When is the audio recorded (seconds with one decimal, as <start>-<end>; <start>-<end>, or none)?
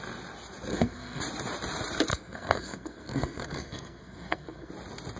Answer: 0.0-0.7; 1.2-2.1; 4.7-5.2